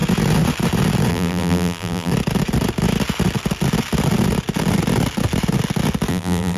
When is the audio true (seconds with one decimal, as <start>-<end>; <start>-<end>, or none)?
0.0-1.1; 2.1-6.1